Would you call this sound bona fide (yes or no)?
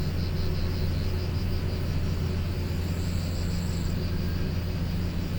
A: yes